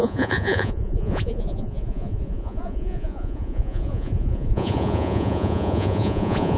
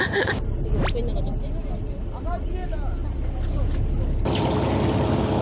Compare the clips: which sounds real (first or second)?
second